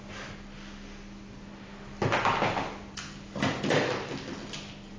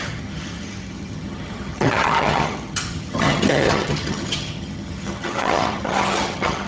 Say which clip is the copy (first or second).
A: second